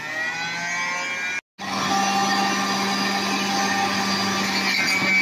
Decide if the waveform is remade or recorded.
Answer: recorded